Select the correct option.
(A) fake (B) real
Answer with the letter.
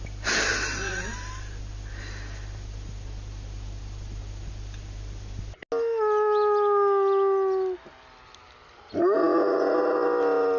B